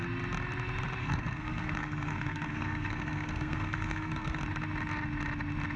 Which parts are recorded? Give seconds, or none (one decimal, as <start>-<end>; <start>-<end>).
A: 0.0-1.0; 4.4-5.8